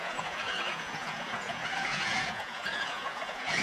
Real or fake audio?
fake